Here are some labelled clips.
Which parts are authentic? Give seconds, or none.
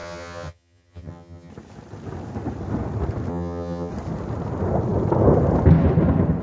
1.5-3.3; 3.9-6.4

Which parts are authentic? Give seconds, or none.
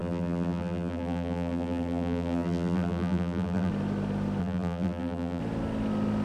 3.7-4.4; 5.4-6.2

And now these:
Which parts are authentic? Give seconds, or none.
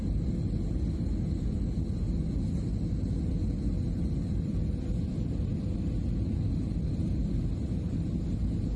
0.0-8.8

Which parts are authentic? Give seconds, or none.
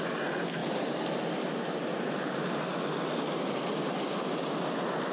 0.0-5.1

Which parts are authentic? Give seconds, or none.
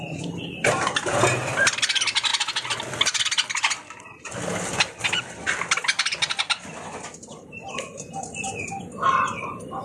0.0-9.8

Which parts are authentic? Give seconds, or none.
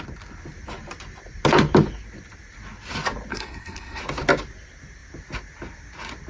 0.0-3.3; 4.0-6.3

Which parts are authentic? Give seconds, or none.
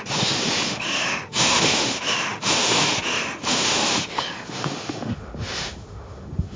none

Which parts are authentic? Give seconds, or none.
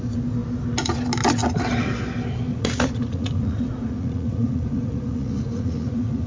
0.0-2.5